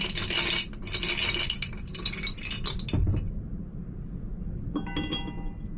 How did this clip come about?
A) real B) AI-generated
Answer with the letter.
A